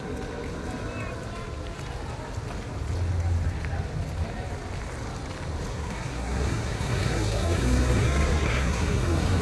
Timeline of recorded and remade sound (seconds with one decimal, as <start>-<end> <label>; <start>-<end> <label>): 0.0-5.7 recorded; 5.7-9.4 remade